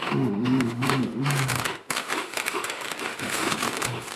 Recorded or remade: remade